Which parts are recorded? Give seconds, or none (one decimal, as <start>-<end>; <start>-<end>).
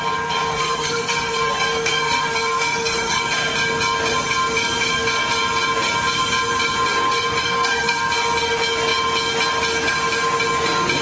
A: 0.0-0.5; 3.2-7.4; 8.1-11.0